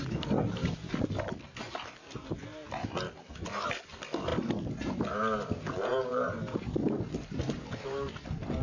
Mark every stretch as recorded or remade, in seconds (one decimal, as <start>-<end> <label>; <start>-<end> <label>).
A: 0.0-8.6 recorded